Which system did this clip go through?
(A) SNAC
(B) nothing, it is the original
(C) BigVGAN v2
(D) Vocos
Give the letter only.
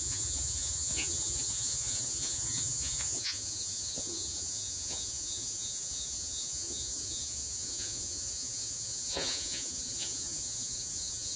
D